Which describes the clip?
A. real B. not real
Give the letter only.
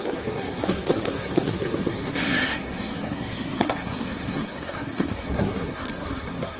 B